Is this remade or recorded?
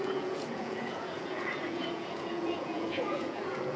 remade